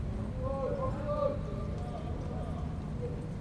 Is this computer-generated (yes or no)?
no